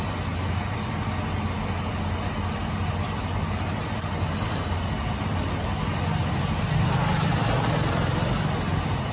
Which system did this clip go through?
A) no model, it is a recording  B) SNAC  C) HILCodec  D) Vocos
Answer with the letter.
A